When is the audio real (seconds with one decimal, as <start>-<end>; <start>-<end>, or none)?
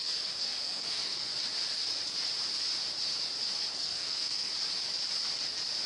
1.3-3.7; 4.5-5.9